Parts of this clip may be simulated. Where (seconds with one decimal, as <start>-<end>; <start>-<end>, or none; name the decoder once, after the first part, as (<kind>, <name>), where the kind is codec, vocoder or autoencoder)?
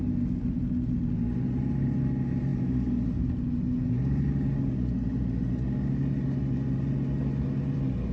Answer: none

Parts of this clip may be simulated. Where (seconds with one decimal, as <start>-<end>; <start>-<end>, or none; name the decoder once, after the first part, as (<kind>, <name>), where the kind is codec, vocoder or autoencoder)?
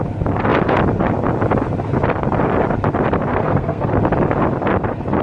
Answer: 3.3-3.9 (codec, SNAC)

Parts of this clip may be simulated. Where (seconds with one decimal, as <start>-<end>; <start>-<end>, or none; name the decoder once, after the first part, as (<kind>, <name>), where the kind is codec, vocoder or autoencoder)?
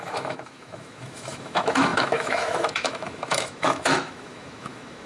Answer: 0.0-5.1 (autoencoder, DAC-VAE)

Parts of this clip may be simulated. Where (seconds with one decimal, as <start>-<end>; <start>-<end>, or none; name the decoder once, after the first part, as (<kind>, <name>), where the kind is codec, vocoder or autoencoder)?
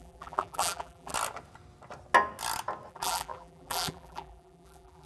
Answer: 0.0-1.1 (vocoder, BigVGAN v2); 2.9-5.1